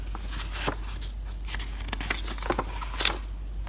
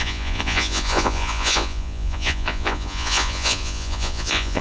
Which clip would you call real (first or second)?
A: first